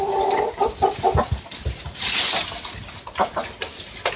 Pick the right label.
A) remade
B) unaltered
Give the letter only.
B